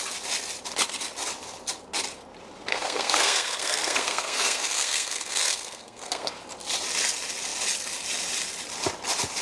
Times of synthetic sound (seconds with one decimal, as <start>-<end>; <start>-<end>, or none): 2.7-6.3